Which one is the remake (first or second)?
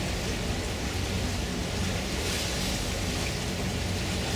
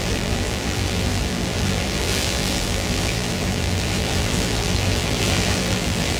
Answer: second